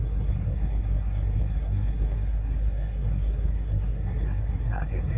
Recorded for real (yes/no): no